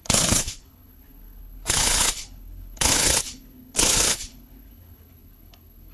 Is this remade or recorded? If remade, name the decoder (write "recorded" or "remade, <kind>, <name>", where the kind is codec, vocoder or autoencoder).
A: remade, codec, HILCodec